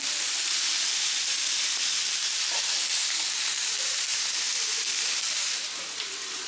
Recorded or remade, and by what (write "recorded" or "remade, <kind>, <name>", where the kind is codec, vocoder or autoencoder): remade, vocoder, BigVGAN v2